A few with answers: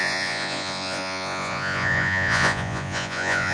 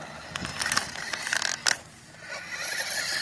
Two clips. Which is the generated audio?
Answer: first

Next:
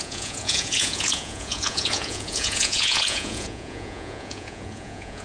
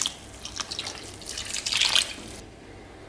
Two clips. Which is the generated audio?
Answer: first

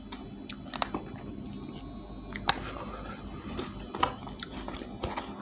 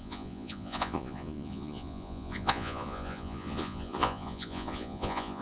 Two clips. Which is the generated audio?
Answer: second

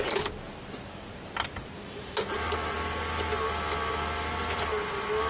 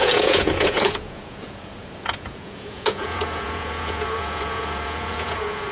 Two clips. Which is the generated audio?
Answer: second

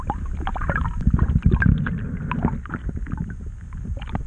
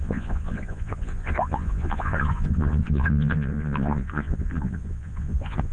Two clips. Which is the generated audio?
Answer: second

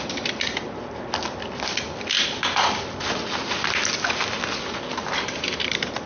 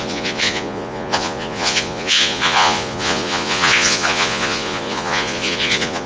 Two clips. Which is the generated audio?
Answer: second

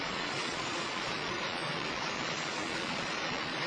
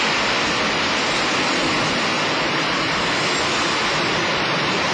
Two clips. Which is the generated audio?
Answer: first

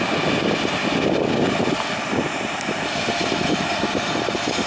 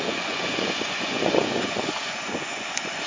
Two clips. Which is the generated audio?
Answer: second